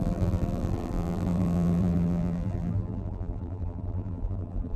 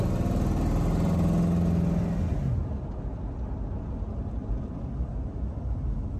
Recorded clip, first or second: second